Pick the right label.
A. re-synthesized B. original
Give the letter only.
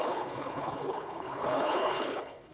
A